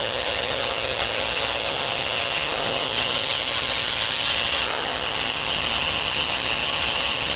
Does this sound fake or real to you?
fake